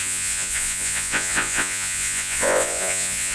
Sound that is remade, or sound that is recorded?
remade